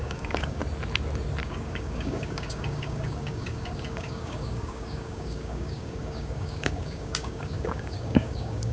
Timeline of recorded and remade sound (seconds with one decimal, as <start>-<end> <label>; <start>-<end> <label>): 0.0-0.6 remade; 0.6-1.4 recorded; 1.4-8.7 remade